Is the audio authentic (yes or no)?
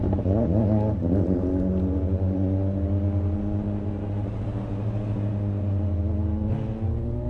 yes